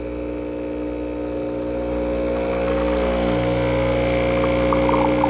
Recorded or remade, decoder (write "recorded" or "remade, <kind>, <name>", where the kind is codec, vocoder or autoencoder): recorded